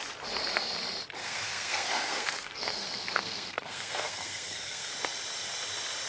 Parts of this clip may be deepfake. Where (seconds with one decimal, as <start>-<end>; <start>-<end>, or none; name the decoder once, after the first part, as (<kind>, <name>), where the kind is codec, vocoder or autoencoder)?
1.2-4.9 (codec, SNAC)